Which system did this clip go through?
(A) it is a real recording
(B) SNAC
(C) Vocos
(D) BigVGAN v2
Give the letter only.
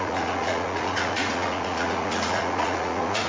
C